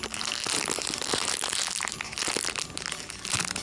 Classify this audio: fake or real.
real